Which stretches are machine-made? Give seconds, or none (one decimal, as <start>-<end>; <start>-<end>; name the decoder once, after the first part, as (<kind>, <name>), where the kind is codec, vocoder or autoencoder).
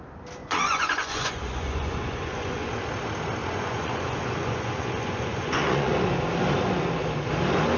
0.4-2.7 (vocoder, Vocos); 3.4-5.9